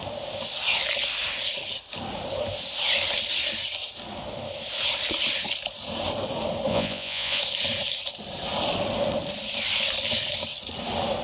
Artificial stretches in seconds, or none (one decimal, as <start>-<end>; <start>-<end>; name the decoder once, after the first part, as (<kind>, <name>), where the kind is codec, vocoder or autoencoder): 6.7-7.4 (vocoder, Vocos)